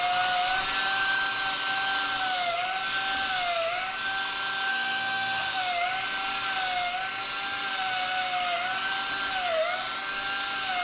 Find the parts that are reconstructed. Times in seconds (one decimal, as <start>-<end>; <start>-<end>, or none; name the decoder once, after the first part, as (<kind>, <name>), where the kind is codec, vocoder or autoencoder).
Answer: 4.7-5.6 (autoencoder, DAC-VAE)